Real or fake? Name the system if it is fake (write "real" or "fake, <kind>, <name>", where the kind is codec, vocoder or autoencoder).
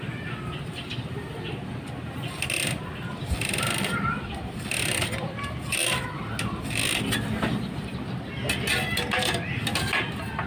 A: real